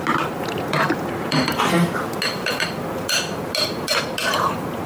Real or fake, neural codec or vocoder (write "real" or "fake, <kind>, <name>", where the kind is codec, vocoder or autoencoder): real